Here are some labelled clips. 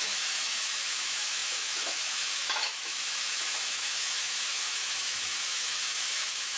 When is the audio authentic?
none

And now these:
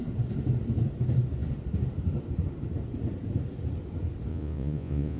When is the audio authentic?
0.0-4.3

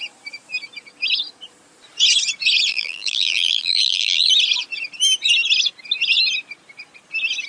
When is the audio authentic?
0.0-2.7; 4.3-7.5